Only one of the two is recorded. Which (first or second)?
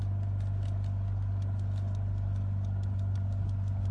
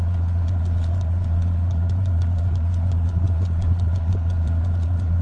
first